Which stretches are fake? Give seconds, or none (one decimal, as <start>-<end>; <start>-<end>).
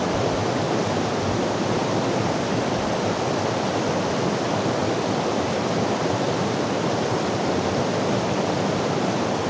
none